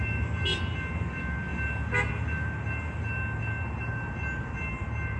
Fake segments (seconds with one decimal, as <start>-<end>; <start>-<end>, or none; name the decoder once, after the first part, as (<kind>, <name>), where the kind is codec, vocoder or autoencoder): none

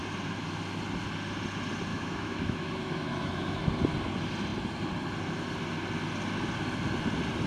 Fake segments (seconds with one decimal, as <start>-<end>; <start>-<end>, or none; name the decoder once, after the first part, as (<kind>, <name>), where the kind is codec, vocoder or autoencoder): 1.9-3.6 (autoencoder, DAC-VAE)

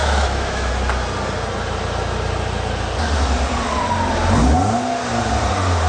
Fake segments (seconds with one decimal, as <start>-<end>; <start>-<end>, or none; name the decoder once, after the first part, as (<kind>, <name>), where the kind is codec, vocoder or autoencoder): 0.0-0.7 (autoencoder, DAC-VAE)

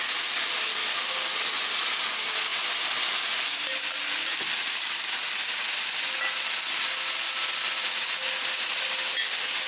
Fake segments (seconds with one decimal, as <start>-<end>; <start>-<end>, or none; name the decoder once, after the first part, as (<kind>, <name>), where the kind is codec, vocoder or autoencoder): none

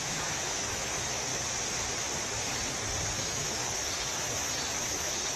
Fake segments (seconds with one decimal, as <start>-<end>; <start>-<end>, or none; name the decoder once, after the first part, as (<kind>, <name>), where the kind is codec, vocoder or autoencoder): 0.0-1.3 (autoencoder, DAC-VAE); 3.1-3.6; 4.6-5.4

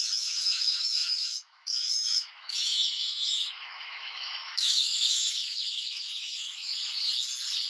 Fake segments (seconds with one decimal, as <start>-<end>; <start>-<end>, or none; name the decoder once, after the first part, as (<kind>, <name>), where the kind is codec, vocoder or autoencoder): 0.0-6.7 (autoencoder, DAC-VAE)